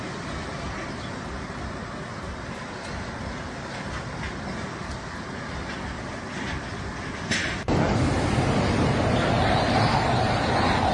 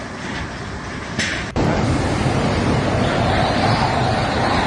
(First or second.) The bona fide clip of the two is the first